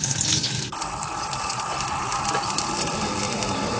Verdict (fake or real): real